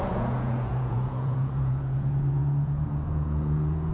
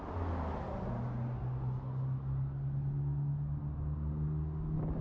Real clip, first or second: second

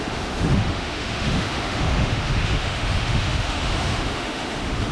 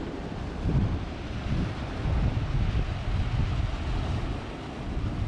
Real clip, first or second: second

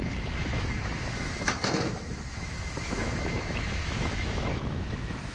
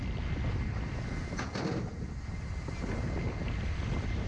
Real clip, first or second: second